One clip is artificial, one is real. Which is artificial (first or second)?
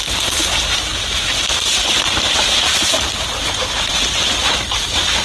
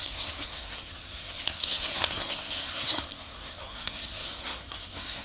second